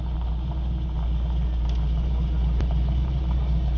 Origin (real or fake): real